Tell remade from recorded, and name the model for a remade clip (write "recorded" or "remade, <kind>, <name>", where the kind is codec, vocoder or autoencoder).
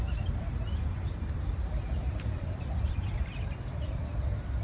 remade, vocoder, BigVGAN v2